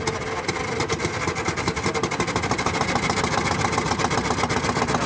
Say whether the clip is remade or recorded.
recorded